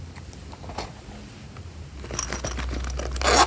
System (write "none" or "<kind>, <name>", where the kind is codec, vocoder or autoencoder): none